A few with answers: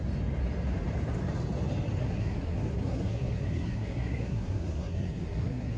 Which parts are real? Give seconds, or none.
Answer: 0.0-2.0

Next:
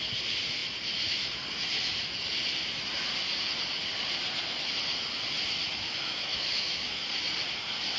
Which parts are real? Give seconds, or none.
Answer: 0.0-5.7; 7.0-8.0

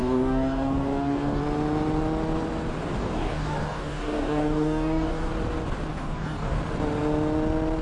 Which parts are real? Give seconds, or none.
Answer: 1.4-3.0; 5.3-5.9; 6.6-7.8

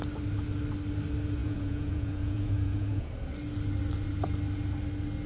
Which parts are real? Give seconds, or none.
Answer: 0.0-1.4; 3.1-5.3